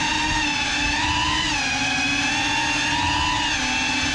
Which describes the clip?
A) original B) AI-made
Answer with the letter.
A